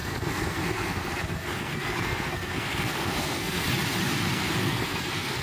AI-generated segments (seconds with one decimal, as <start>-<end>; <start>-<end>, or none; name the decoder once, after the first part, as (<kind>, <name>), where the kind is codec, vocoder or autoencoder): 0.0-3.6 (codec, SNAC); 4.3-5.4